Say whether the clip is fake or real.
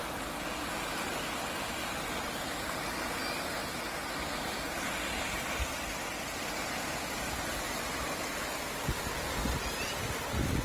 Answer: real